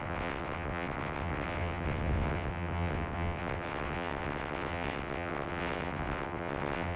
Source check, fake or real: fake